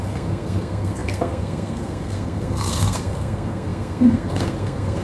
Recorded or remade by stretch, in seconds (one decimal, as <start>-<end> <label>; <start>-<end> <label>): 0.0-5.0 remade